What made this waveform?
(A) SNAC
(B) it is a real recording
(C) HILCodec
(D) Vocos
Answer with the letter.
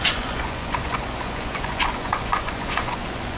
D